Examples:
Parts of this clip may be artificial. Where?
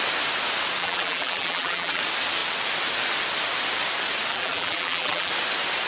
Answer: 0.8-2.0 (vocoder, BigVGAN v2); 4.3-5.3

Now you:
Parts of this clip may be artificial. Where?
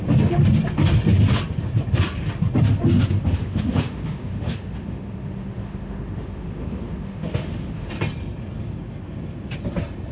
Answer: 3.3-7.9 (autoencoder, DAC-VAE)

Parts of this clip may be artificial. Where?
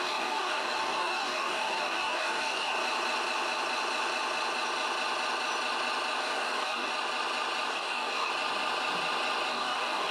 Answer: 0.0-2.8 (codec, DAC); 6.2-6.9; 7.7-8.3; 9.5-10.1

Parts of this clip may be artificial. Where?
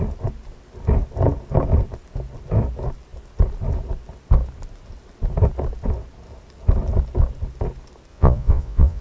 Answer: 8.1-9.0 (vocoder, Vocos)